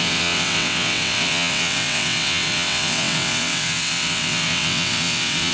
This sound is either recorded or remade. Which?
remade